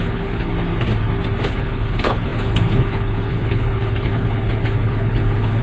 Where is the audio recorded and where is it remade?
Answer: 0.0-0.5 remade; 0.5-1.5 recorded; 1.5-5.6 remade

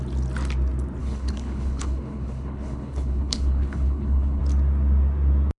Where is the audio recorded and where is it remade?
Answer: 0.0-1.0 recorded; 1.0-4.4 remade; 4.4-5.6 recorded

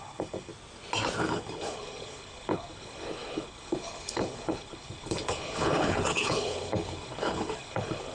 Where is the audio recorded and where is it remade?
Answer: 0.0-0.5 remade; 0.5-1.2 recorded; 1.2-8.1 remade